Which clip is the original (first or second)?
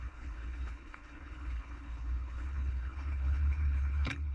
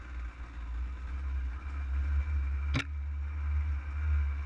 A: second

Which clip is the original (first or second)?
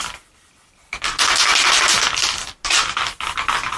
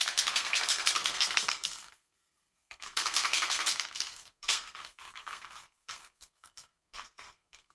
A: first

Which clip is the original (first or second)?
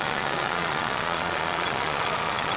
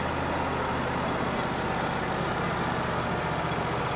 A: second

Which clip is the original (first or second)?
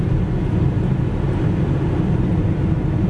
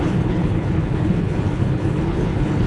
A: first